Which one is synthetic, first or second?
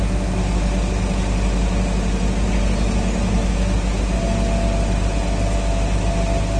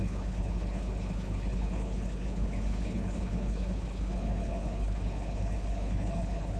second